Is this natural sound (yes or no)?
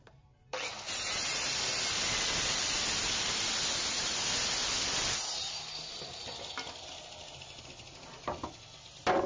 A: yes